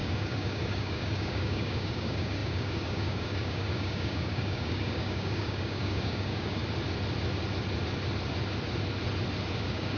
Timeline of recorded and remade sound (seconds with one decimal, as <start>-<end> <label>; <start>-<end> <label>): 0.0-6.6 remade; 6.6-9.6 recorded; 9.6-10.0 remade